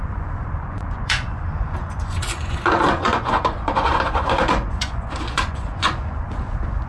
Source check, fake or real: fake